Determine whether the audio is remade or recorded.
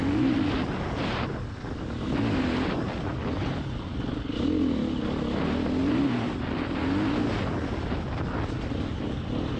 recorded